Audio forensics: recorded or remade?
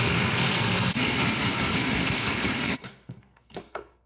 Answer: remade